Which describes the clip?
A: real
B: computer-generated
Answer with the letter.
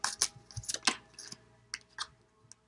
A